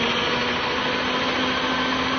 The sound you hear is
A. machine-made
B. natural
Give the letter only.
B